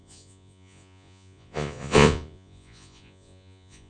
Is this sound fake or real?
fake